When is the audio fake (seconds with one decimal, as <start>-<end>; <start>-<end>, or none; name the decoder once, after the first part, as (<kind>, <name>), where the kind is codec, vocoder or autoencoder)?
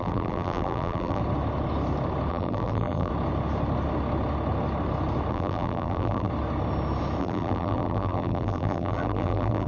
0.0-1.2 (vocoder, BigVGAN v2); 2.3-3.1; 5.3-6.3; 7.2-9.7